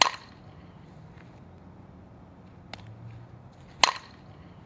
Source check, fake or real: real